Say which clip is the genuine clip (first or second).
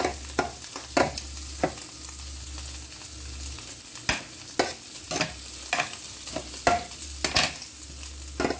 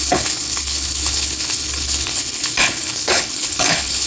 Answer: first